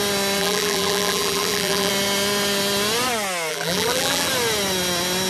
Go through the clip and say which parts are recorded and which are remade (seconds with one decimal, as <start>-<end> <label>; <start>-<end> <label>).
0.0-0.4 recorded; 0.4-1.9 remade; 1.9-3.5 recorded; 3.5-4.3 remade; 4.3-5.3 recorded